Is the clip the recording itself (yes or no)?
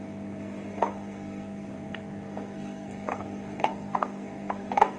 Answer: no